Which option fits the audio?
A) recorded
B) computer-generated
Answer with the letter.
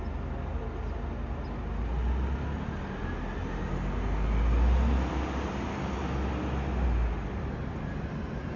A